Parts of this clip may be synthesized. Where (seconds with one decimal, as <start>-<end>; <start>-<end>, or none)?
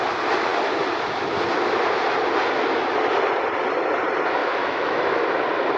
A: 4.4-5.3